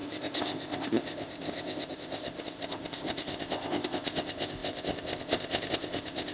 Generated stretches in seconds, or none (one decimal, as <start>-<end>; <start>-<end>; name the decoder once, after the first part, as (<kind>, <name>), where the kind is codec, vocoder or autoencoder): 0.0-6.3 (codec, ZipCodec)